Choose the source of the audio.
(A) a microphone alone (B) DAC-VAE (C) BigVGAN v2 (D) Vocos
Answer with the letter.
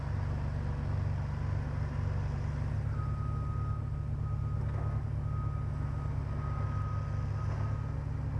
A